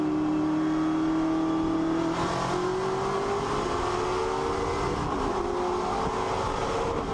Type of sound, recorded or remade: recorded